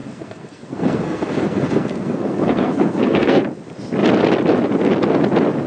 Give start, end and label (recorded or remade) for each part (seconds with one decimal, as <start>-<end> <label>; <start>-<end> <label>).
0.0-3.4 remade; 3.4-5.7 recorded